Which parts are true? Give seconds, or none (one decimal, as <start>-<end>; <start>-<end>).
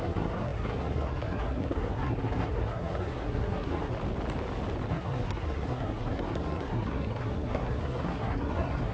3.9-4.9